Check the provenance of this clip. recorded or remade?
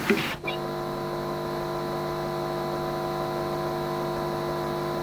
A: recorded